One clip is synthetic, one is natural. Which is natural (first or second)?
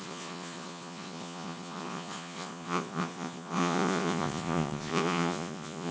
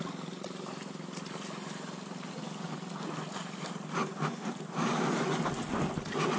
second